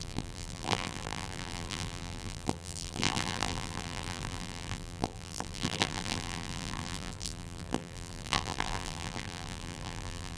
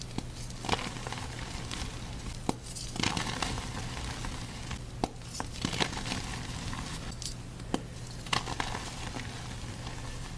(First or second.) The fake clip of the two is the first